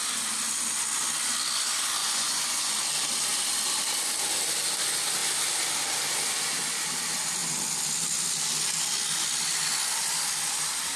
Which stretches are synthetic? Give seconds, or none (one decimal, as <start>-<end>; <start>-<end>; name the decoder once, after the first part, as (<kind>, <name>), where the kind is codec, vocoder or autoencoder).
2.0-2.7 (vocoder, Vocos)